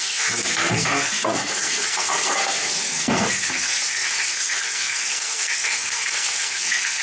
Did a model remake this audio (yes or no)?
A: yes